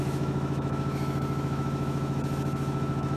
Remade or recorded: remade